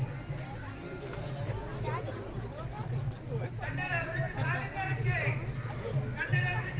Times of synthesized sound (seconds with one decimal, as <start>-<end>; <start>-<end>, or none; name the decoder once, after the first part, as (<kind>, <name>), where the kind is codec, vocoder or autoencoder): none